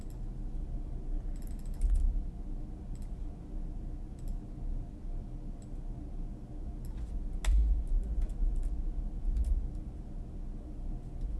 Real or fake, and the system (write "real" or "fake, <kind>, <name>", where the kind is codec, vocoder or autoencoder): real